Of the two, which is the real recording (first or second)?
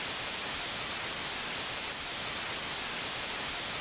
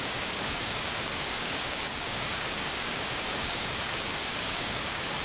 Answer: first